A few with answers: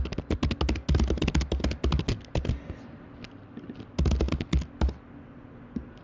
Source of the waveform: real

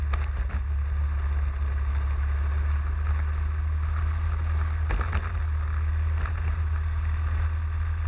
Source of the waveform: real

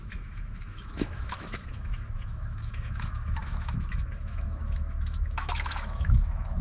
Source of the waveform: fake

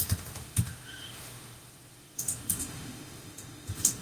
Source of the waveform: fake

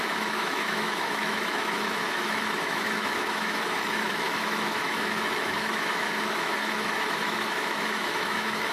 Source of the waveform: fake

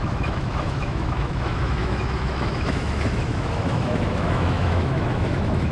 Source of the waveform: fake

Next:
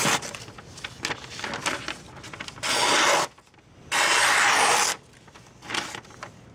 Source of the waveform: real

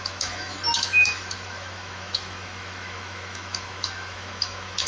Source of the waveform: fake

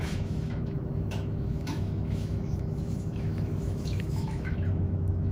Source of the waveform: fake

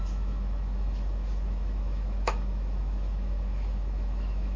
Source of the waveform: fake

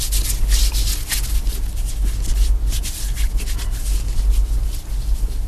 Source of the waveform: real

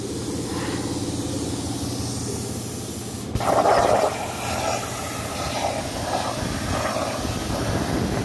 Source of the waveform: real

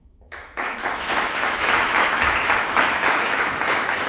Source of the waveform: fake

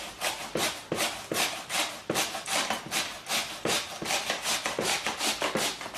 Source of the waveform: real